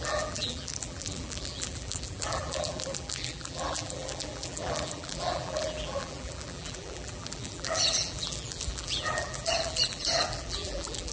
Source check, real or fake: fake